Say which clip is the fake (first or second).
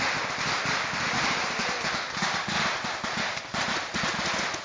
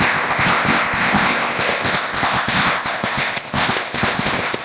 second